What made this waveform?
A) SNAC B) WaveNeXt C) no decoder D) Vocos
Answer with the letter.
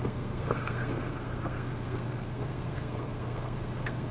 A